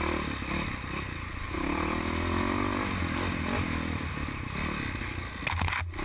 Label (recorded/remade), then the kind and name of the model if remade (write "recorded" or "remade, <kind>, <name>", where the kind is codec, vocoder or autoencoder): recorded